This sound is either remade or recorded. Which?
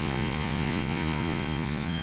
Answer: remade